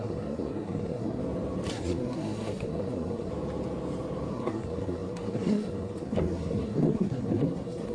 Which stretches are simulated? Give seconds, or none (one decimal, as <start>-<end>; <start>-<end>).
0.0-1.2; 1.7-3.3; 4.3-7.9